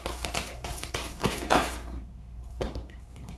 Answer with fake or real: fake